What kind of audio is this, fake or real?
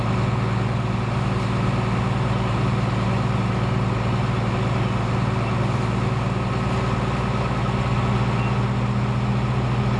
real